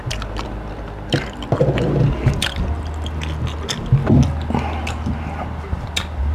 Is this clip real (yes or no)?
yes